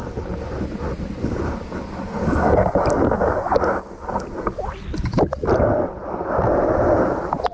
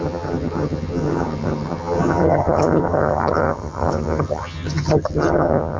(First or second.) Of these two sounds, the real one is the first